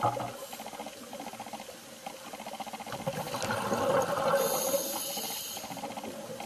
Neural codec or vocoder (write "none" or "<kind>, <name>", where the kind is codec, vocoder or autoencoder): none